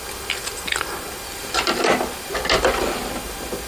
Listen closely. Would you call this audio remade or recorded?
recorded